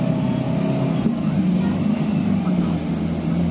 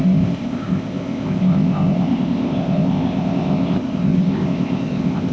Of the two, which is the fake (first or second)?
second